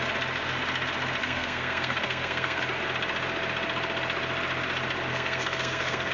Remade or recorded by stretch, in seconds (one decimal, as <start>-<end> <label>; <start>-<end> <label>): 0.0-1.2 recorded; 1.2-2.6 remade; 2.6-5.1 recorded; 5.1-6.1 remade